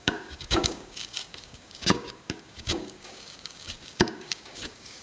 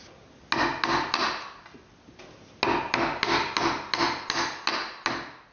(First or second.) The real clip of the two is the second